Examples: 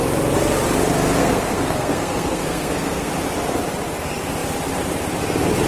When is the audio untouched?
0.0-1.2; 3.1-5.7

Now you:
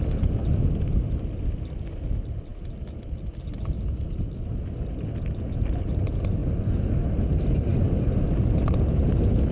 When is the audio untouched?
0.0-9.5

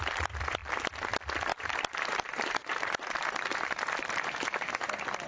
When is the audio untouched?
0.0-1.5; 4.7-5.3

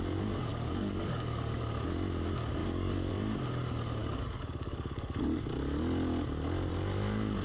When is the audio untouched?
0.0-0.5; 1.6-2.6; 3.1-4.0; 5.4-7.4